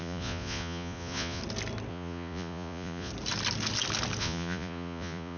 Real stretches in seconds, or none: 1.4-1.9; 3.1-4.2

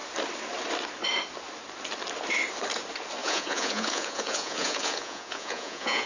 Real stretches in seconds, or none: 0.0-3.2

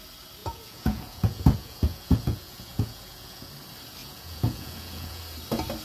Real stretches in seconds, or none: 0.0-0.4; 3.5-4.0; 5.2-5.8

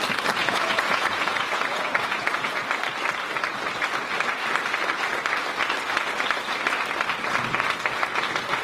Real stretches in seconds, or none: 0.0-0.4; 2.6-8.6

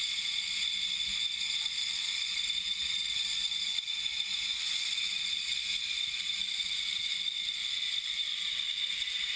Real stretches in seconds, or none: 0.0-4.1; 4.6-9.4

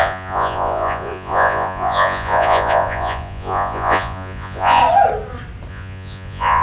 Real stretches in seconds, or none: 4.8-5.7

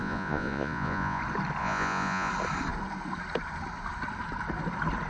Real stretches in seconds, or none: 1.2-1.6; 2.3-5.1

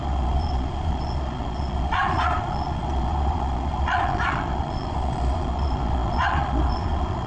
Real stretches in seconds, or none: none